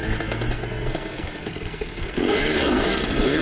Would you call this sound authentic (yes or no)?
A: no